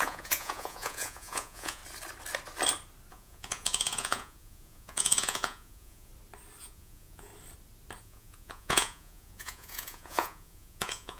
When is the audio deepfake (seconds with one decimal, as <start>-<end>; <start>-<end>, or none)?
0.0-1.8; 3.1-6.1; 6.6-7.3; 8.0-11.2

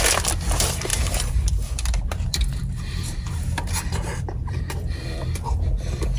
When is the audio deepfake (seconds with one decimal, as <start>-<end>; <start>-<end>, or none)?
0.9-4.6

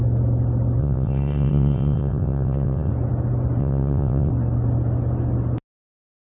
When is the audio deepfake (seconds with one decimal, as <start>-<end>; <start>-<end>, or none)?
0.8-2.9; 3.6-4.3

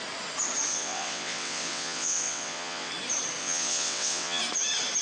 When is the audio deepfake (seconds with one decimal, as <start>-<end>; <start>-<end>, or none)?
0.7-2.9; 3.4-4.4

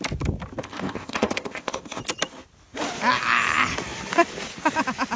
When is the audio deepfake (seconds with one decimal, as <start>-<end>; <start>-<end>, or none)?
0.6-2.0